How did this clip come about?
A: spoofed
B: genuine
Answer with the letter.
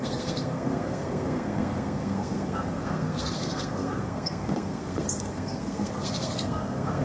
A